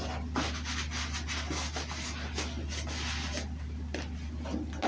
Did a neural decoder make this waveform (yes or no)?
no